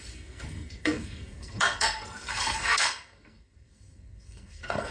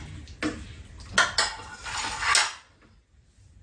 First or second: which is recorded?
second